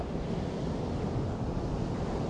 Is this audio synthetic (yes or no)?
no